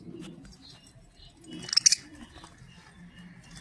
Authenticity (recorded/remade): recorded